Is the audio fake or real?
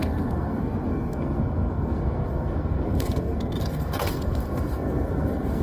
fake